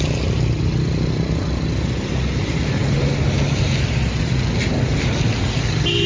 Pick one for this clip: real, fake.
real